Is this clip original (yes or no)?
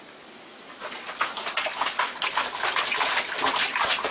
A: yes